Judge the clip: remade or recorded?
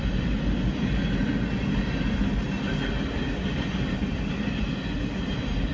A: recorded